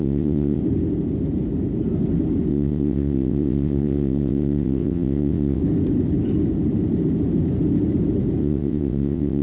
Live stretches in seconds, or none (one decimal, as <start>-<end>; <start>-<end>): 0.6-2.5; 5.6-8.4